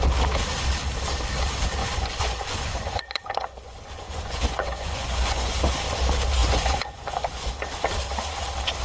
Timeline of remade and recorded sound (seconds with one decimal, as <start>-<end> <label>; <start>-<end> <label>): 0.0-1.8 recorded; 1.8-5.6 remade; 5.6-6.4 recorded; 6.4-7.5 remade; 7.5-8.8 recorded